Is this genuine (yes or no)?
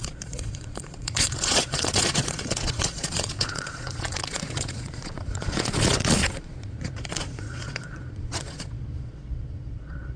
no